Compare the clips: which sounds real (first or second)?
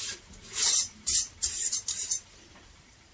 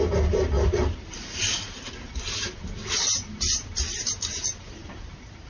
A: second